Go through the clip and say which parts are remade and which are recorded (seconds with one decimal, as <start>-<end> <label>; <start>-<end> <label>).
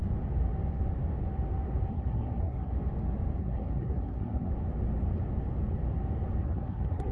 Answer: 0.0-1.9 recorded; 1.9-2.7 remade; 2.7-3.4 recorded; 3.4-4.5 remade; 4.5-6.4 recorded; 6.4-7.1 remade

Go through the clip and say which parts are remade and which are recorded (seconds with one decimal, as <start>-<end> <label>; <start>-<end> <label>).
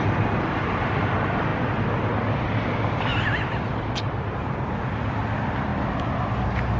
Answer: 0.0-6.8 recorded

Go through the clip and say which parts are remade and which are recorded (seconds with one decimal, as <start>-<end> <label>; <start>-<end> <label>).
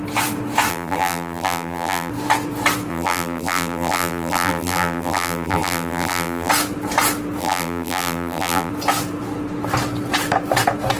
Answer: 0.0-0.7 recorded; 0.7-2.1 remade; 2.1-2.9 recorded; 2.9-6.5 remade; 6.5-7.4 recorded; 7.4-8.7 remade; 8.7-11.0 recorded